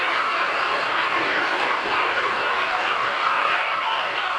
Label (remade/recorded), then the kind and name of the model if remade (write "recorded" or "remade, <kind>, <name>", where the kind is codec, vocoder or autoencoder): remade, codec, DAC